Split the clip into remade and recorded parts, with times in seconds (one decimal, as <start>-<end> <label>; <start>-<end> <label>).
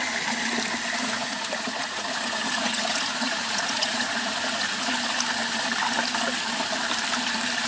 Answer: 0.0-1.0 recorded; 1.0-4.9 remade; 4.9-7.7 recorded